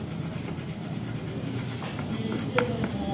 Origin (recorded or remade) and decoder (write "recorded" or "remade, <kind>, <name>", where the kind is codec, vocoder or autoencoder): recorded